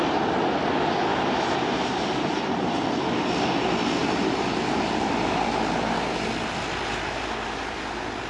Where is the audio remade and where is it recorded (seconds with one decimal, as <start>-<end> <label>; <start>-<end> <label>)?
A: 0.0-1.1 recorded; 1.1-2.8 remade; 2.8-8.3 recorded